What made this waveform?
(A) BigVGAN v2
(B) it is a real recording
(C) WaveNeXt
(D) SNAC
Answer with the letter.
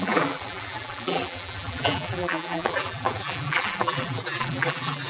A